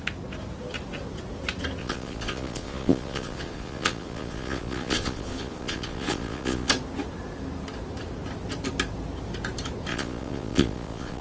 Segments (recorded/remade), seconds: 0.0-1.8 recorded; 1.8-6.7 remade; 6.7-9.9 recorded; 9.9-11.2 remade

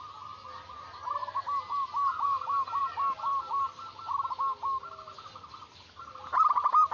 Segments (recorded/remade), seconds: 0.0-6.9 recorded

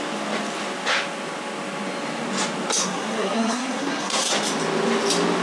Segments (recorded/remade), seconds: 0.0-2.8 recorded; 2.8-4.3 remade; 4.3-5.4 recorded